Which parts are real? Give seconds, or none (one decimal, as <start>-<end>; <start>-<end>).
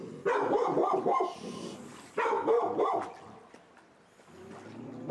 0.0-5.1